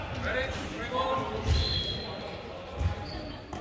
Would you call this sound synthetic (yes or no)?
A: no